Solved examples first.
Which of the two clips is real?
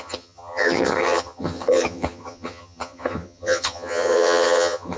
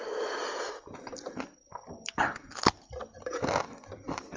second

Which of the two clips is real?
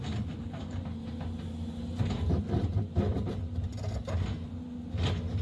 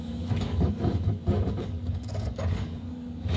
first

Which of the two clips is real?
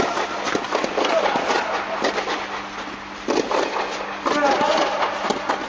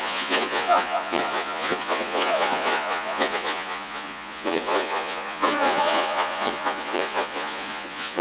first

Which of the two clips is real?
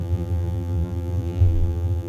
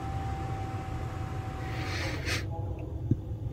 second